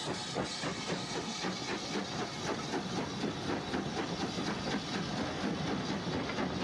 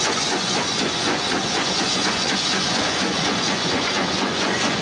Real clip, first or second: first